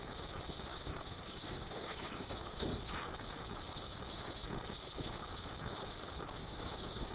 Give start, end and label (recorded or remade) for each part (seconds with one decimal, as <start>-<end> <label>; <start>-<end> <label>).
0.0-0.7 recorded; 0.7-2.8 remade; 2.8-6.4 recorded; 6.4-7.1 remade